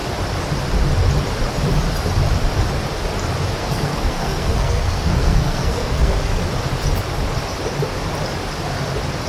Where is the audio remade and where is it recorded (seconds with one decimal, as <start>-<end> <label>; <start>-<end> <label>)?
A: 0.0-3.6 recorded; 3.6-6.4 remade; 6.4-9.3 recorded